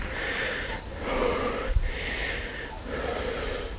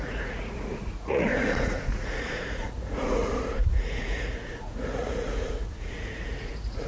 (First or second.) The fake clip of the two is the second